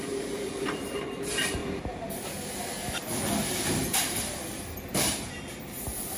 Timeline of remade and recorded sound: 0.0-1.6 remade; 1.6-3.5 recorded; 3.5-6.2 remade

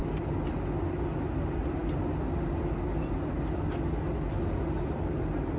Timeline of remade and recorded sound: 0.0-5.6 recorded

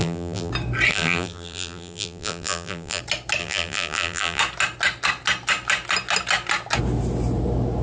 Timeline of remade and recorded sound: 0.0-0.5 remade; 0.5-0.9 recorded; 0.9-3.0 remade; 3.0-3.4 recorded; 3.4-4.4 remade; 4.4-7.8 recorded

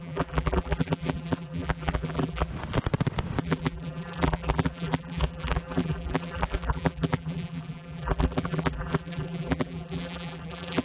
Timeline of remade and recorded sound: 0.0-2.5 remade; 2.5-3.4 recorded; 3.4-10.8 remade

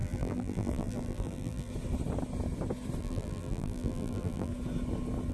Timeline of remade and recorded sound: 0.0-1.7 remade; 1.7-3.0 recorded; 3.0-4.5 remade; 4.5-5.3 recorded

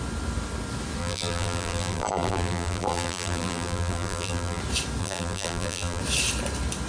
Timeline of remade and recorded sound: 0.0-1.0 recorded; 1.0-4.6 remade; 4.6-5.0 recorded; 5.0-6.0 remade; 6.0-6.9 recorded

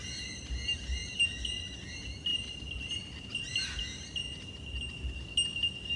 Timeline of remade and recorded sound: 0.0-2.3 recorded; 2.3-3.4 remade; 3.4-6.0 recorded

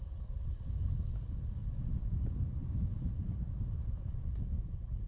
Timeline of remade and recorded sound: 0.0-2.9 recorded; 2.9-4.4 remade; 4.4-5.1 recorded